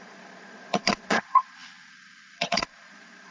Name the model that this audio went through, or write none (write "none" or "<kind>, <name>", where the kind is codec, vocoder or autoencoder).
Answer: vocoder, Vocos